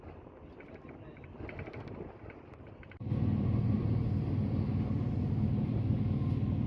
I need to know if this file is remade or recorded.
recorded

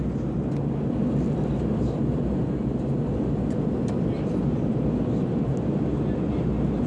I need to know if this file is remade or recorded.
recorded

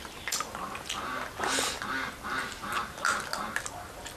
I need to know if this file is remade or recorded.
recorded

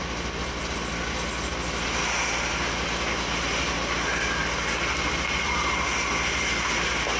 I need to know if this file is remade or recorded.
recorded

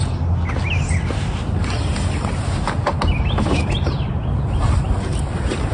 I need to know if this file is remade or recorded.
recorded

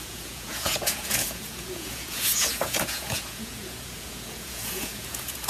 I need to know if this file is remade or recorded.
remade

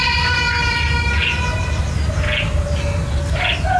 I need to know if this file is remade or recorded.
recorded